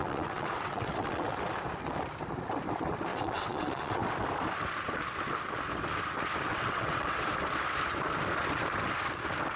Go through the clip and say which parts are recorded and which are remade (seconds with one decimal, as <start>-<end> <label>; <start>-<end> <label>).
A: 0.0-1.4 remade; 1.4-3.1 recorded; 3.1-4.0 remade; 4.0-6.5 recorded; 6.5-7.3 remade; 7.3-9.6 recorded